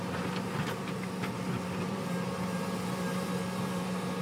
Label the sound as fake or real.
real